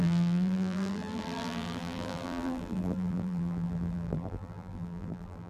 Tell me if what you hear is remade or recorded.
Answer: remade